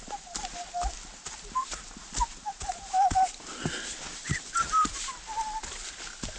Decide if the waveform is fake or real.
fake